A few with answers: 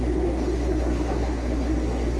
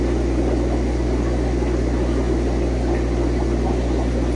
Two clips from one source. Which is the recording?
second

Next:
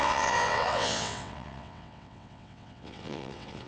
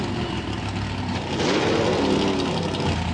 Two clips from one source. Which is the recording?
second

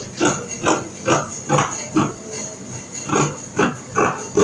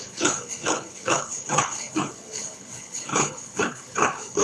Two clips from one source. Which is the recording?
first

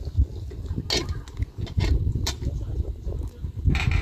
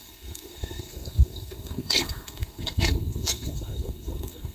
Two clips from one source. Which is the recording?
first